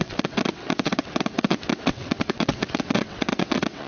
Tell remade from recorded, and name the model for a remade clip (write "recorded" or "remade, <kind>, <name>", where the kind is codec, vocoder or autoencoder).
remade, vocoder, WaveNeXt